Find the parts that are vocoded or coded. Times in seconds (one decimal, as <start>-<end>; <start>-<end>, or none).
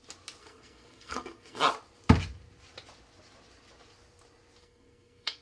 0.4-1.6; 4.6-5.4